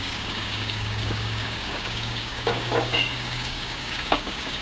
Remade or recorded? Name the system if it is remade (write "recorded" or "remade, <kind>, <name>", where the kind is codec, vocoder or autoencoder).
remade, codec, DAC